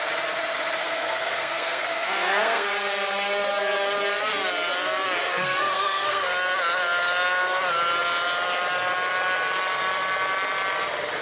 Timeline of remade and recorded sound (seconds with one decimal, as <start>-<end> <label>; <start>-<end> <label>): 0.0-0.8 recorded; 0.8-2.7 remade; 2.7-5.2 recorded; 5.2-6.3 remade; 6.3-11.2 recorded